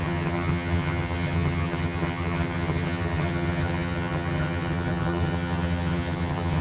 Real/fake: fake